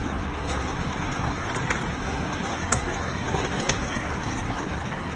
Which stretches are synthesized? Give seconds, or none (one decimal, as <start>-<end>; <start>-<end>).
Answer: 0.0-1.5; 1.9-5.2

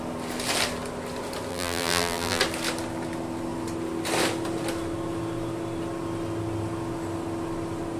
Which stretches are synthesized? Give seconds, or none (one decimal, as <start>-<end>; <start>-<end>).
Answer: 1.5-2.4

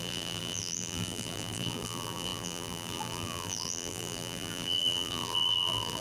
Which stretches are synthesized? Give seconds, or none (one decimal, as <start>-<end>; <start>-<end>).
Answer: 0.0-6.0

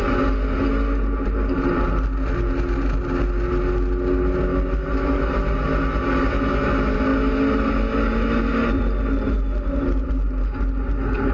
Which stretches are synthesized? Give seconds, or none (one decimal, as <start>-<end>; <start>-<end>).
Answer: none

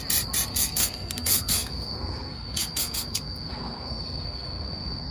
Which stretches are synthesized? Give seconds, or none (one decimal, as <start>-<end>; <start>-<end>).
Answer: 0.5-5.1

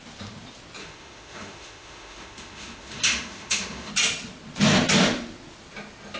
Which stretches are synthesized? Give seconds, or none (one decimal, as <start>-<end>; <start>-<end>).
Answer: 0.8-3.9